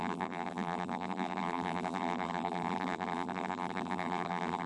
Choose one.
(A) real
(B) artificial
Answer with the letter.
B